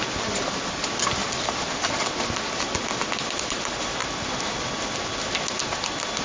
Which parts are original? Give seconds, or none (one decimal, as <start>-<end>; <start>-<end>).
0.0-1.2; 1.7-6.2

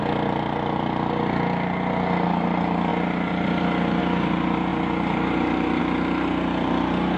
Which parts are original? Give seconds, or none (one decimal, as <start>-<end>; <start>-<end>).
0.0-7.2

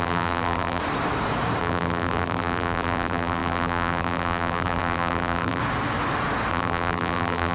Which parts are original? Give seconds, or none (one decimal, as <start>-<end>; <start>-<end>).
0.8-1.6; 5.6-6.5

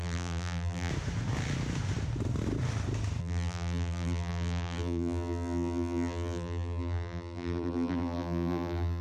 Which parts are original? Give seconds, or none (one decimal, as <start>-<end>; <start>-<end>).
0.9-3.2

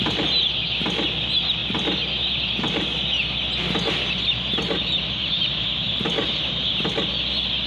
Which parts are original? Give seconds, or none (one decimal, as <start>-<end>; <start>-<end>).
0.0-5.2; 7.1-7.7

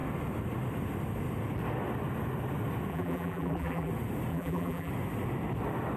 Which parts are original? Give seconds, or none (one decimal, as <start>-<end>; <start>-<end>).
0.0-2.9; 3.9-4.3; 4.9-6.0

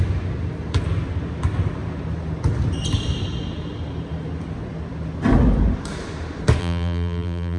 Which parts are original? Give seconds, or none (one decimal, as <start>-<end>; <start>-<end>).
0.0-6.6